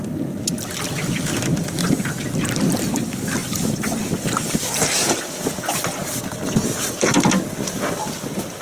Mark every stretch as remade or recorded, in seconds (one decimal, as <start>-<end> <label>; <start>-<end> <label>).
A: 0.0-8.6 recorded